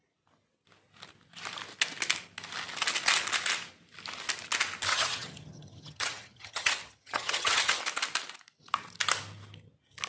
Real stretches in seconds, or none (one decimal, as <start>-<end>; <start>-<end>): 0.0-4.9; 7.8-10.1